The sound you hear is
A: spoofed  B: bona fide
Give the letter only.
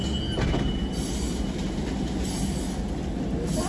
B